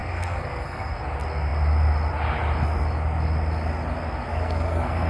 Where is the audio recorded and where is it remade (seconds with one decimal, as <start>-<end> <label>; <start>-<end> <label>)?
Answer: 0.0-1.0 remade; 1.0-4.3 recorded; 4.3-5.1 remade